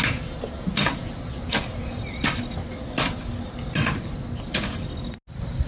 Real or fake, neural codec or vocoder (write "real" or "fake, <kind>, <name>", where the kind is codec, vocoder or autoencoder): real